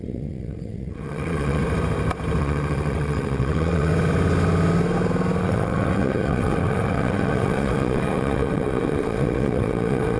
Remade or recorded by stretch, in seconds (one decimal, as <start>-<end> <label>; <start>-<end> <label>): 0.0-1.6 remade; 1.6-2.4 recorded; 2.4-3.9 remade; 3.9-5.4 recorded; 5.4-10.2 remade